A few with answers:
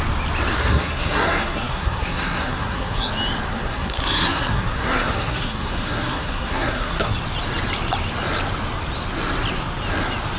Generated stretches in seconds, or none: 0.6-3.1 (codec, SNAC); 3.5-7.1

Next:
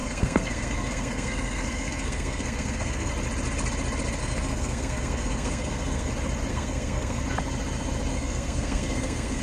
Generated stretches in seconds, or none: 0.0-3.1 (codec, SNAC); 4.2-6.1; 6.5-7.2; 8.1-9.4

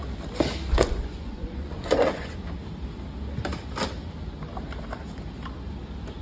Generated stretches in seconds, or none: 0.7-2.3 (vocoder, Vocos)

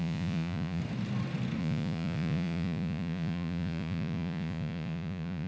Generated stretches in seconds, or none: 0.0-0.8 (vocoder, Vocos); 1.6-5.5

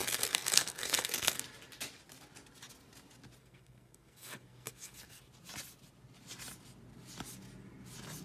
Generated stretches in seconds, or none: 0.0-1.4 (codec, SNAC); 3.4-5.2

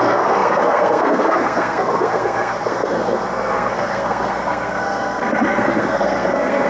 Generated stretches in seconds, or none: 0.0-6.7 (codec, SNAC)

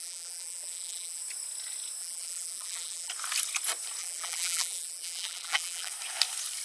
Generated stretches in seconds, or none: 0.0-1.2 (vocoder, BigVGAN v2); 2.0-3.1; 4.0-5.9